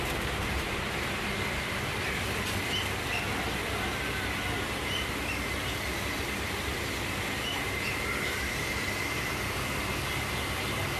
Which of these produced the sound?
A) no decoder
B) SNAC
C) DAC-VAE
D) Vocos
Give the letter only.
A